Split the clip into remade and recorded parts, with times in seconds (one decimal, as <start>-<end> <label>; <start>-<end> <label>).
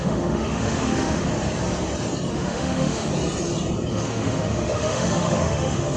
0.0-1.3 remade; 1.3-2.3 recorded; 2.3-3.1 remade; 3.1-3.9 recorded; 3.9-6.0 remade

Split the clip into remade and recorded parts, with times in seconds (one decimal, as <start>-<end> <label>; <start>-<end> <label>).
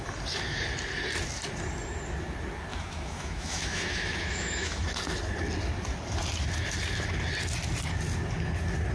0.0-2.7 recorded; 2.7-4.8 remade; 4.8-8.9 recorded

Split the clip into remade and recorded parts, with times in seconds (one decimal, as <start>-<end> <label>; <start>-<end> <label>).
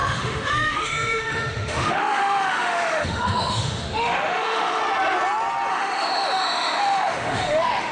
0.0-4.8 remade; 4.8-5.7 recorded; 5.7-7.9 remade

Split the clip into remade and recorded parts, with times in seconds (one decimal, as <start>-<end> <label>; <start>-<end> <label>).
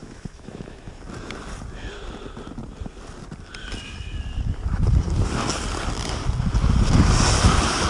0.0-0.9 remade; 0.9-7.9 recorded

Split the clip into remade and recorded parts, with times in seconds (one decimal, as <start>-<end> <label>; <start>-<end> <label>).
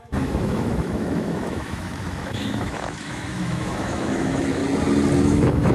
0.0-4.6 remade; 4.6-5.2 recorded; 5.2-5.7 remade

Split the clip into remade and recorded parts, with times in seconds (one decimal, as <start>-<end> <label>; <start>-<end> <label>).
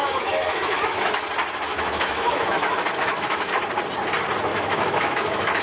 0.0-1.2 remade; 1.2-1.7 recorded; 1.7-3.6 remade; 3.6-4.5 recorded; 4.5-5.6 remade